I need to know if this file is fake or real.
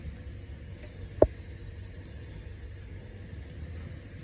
real